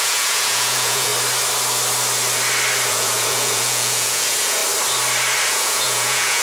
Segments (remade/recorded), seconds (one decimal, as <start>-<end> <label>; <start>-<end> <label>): 0.0-1.1 remade; 1.1-2.9 recorded; 2.9-4.6 remade; 4.6-5.5 recorded; 5.5-6.4 remade